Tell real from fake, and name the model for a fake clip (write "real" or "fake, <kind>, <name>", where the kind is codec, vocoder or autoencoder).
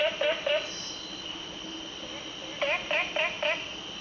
real